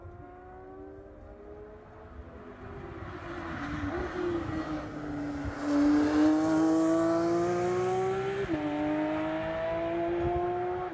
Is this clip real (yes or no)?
yes